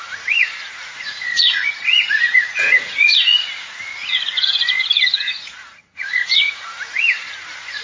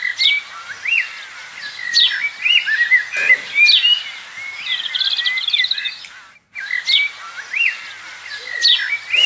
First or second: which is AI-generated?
first